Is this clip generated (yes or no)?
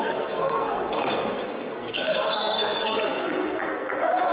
yes